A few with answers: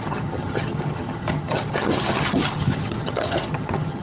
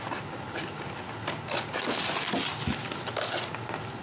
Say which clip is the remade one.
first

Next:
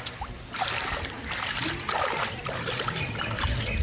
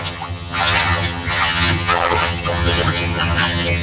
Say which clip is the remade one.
second